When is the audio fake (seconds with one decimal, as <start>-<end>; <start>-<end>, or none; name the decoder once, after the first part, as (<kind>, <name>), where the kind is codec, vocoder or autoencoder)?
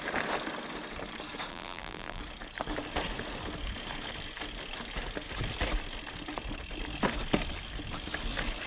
1.5-2.2 (vocoder, BigVGAN v2)